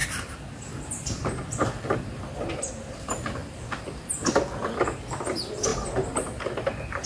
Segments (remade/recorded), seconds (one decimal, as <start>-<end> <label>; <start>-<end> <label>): 0.0-7.1 recorded